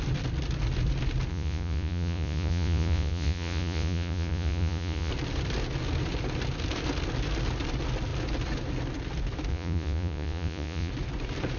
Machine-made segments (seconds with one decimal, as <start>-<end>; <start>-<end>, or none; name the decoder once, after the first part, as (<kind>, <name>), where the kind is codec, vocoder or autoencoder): 1.3-5.1 (vocoder, Vocos); 9.5-10.9